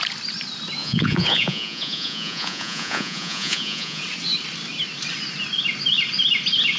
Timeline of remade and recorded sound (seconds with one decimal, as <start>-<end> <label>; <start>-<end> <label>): 0.0-0.8 recorded; 0.8-4.0 remade; 4.0-6.8 recorded